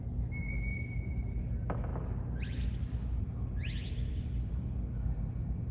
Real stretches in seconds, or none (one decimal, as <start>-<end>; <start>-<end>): 0.0-5.7